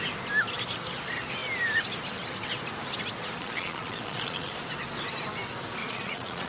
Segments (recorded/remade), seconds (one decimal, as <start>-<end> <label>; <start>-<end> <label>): 0.0-3.4 recorded; 3.4-4.5 remade; 4.5-5.8 recorded; 5.8-6.5 remade